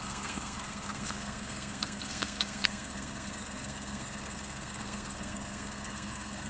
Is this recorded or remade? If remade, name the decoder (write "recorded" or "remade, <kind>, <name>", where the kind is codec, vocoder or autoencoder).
remade, codec, SNAC